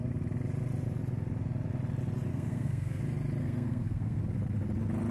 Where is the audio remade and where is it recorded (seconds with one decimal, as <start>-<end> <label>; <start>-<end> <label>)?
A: 0.0-2.3 recorded; 2.3-3.0 remade; 3.0-3.4 recorded; 3.4-4.2 remade; 4.2-5.1 recorded